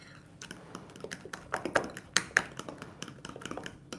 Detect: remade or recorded recorded